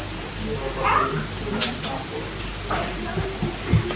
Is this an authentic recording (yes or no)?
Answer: yes